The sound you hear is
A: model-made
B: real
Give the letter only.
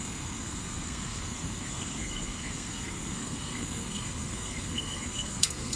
A